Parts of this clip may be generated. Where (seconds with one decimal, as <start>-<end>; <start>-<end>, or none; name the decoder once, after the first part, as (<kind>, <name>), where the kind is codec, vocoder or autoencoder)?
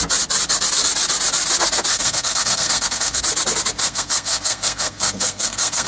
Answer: 1.9-3.2 (codec, SNAC); 3.8-5.9